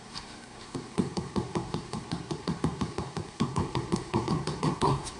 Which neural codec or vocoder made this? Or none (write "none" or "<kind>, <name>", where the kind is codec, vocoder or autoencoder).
codec, SNAC